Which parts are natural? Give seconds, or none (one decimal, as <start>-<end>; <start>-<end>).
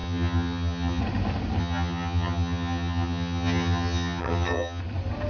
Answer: 1.0-1.6; 4.8-5.3